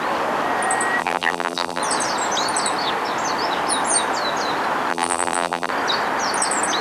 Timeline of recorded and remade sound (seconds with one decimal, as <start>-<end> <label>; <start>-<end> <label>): 0.0-1.0 recorded; 1.0-1.8 remade; 1.8-4.9 recorded; 4.9-5.7 remade; 5.7-6.8 recorded